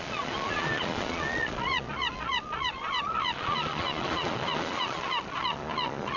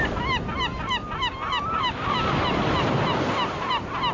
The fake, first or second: first